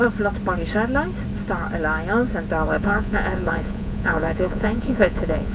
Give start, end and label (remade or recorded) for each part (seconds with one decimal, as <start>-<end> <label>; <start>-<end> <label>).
0.0-2.8 recorded; 2.8-5.5 remade